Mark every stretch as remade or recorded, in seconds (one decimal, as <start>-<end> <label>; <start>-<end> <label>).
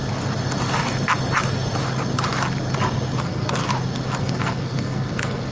0.0-3.2 recorded; 3.2-3.6 remade; 3.6-4.2 recorded; 4.2-5.5 remade